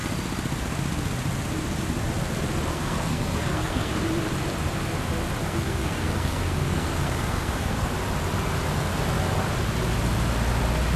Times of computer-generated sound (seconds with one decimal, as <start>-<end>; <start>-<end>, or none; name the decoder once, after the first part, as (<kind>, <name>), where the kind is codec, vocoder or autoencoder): 2.7-3.9 (codec, SNAC); 5.4-7.9